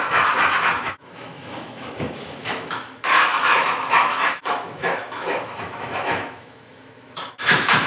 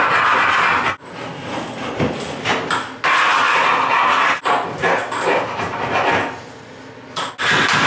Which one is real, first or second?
second